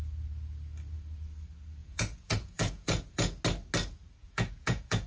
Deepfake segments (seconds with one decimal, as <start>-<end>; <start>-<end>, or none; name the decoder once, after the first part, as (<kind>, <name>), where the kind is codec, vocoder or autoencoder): 1.8-3.4 (vocoder, Vocos); 4.2-5.1